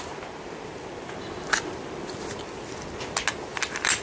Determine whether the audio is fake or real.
real